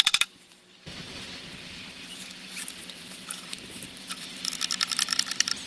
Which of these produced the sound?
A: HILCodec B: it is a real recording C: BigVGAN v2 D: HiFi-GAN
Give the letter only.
C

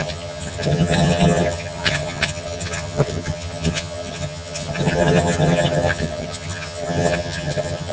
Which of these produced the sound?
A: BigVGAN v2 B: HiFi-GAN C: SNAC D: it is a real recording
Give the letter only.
B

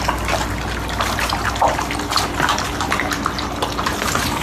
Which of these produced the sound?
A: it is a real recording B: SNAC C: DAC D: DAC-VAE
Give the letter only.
A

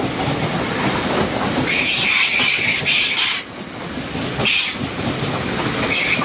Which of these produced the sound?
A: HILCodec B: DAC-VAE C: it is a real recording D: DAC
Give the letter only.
C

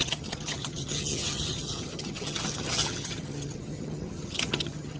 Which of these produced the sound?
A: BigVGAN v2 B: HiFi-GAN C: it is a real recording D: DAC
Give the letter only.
B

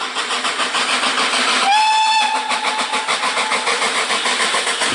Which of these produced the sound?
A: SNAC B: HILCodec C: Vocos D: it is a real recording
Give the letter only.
D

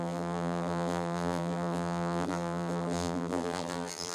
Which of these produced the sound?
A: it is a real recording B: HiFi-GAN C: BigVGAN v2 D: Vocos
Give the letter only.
C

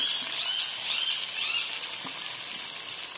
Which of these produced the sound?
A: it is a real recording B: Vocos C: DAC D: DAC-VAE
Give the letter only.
A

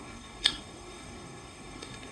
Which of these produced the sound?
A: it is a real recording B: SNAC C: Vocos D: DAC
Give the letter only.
B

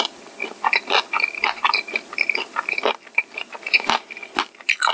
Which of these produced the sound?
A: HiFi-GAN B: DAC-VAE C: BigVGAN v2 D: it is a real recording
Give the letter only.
D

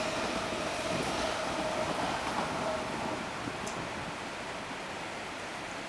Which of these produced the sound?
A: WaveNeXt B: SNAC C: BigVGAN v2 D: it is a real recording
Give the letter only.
D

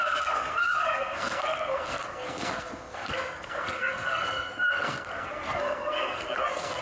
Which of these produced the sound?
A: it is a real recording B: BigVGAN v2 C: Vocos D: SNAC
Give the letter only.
D